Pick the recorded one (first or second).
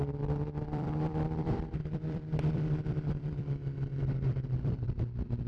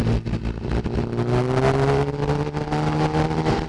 second